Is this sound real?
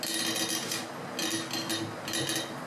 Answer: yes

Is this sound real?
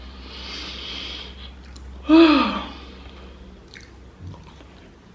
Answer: yes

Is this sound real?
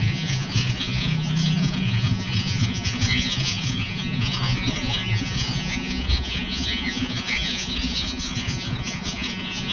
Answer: no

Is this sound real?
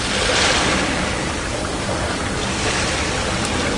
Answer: yes